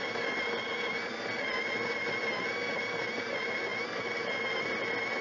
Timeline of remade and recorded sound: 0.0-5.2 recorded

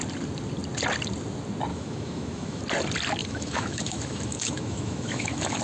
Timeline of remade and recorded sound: 0.0-1.7 recorded; 1.7-2.6 remade; 2.6-3.2 recorded; 3.2-5.6 remade

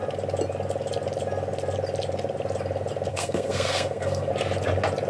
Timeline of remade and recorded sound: 0.0-3.1 recorded; 3.1-4.3 remade; 4.3-5.1 recorded

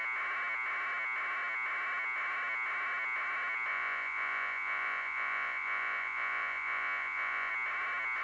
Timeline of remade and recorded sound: 0.0-3.7 recorded; 3.7-7.5 remade; 7.5-8.2 recorded